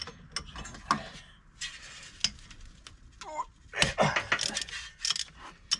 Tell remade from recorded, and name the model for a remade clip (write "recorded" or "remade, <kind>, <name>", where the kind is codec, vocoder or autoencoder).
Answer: recorded